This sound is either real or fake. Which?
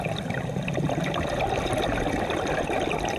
real